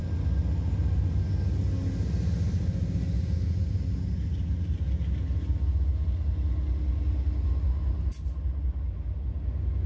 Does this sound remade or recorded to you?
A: recorded